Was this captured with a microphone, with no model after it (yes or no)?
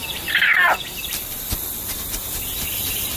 no